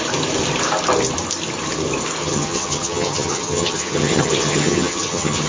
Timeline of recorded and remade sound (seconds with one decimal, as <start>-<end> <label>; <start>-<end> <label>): 0.0-2.2 recorded; 2.2-5.5 remade